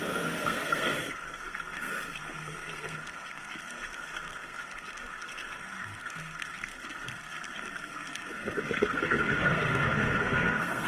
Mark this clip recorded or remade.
remade